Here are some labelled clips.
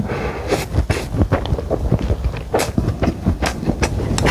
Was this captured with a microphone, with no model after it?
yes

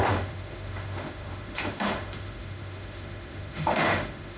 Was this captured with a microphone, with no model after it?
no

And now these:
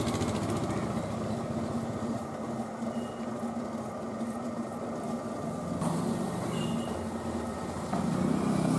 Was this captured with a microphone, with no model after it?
yes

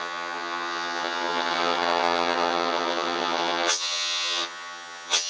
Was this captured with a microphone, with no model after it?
no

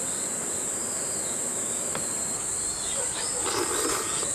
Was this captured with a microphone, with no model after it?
yes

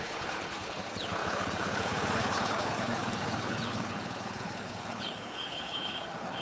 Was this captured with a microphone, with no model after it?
no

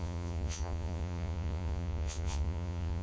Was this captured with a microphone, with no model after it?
no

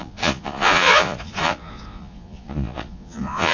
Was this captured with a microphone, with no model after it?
no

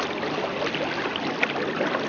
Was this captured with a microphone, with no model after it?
yes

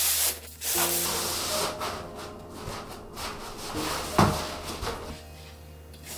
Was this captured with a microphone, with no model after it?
yes